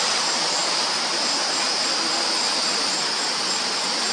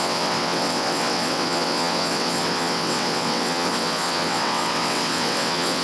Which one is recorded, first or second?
first